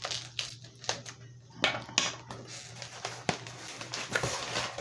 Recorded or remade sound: recorded